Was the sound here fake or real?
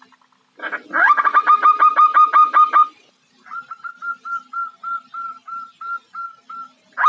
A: real